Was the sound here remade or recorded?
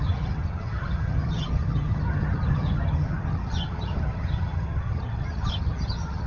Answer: remade